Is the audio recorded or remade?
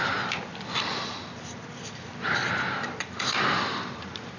recorded